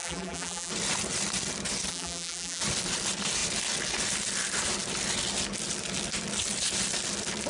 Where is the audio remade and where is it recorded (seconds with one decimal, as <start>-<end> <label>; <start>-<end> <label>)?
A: 0.0-0.7 remade; 0.7-1.9 recorded; 1.9-2.6 remade; 2.6-7.5 recorded